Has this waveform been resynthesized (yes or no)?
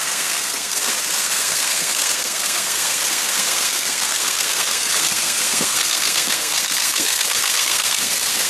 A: yes